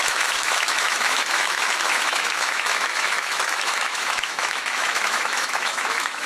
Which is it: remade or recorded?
remade